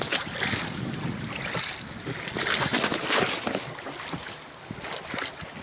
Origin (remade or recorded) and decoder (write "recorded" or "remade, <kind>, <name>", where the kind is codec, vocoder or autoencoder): recorded